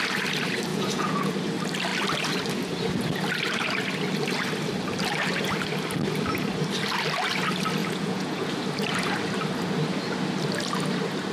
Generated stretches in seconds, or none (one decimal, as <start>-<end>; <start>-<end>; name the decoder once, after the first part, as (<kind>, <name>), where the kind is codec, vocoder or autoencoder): 0.7-1.3 (vocoder, Vocos); 7.8-8.5